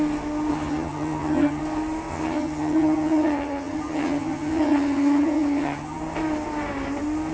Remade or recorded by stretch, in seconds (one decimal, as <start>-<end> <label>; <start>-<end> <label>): 0.0-0.5 recorded; 0.5-1.6 remade; 1.6-2.1 recorded; 2.1-6.0 remade; 6.0-7.3 recorded